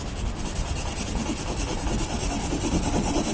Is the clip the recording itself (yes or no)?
yes